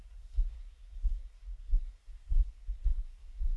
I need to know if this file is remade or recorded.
remade